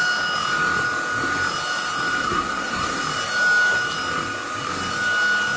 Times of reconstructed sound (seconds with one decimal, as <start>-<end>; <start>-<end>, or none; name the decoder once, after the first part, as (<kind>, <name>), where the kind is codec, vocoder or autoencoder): 2.2-3.0 (codec, SNAC)